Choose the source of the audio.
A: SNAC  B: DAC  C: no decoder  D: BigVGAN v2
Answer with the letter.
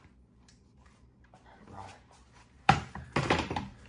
D